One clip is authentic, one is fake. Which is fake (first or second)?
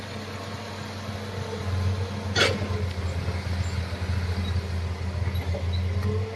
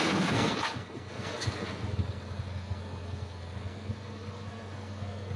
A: second